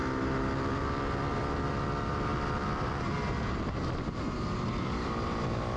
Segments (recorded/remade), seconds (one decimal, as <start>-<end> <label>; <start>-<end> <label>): 0.0-5.8 recorded